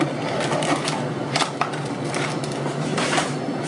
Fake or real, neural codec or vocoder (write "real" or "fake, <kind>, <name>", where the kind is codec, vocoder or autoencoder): fake, vocoder, BigVGAN v2